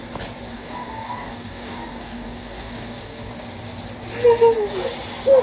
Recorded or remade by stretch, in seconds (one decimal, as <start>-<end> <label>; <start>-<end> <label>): 0.0-0.5 recorded; 0.5-3.3 remade; 3.3-5.4 recorded